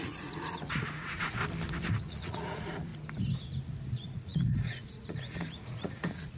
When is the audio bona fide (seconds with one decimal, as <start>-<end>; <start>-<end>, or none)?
1.4-1.9; 2.9-3.9